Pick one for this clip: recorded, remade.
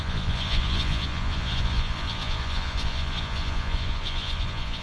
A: remade